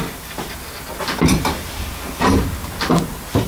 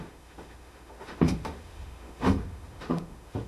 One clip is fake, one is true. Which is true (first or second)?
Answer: first